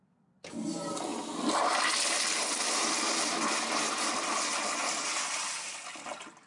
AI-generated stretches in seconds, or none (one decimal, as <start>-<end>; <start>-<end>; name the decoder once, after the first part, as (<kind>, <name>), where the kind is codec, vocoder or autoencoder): none